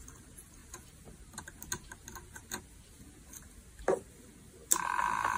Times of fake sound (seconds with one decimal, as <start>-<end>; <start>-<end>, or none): none